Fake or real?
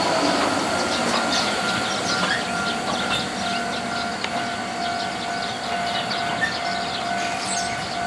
real